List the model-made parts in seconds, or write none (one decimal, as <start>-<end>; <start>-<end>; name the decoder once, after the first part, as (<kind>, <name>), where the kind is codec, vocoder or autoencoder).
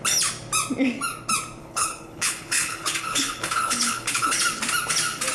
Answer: 1.6-4.3 (codec, HILCodec)